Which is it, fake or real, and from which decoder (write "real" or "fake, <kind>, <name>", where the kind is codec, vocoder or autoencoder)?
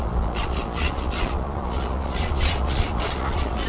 fake, vocoder, Vocos